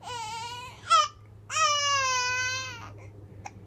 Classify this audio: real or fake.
real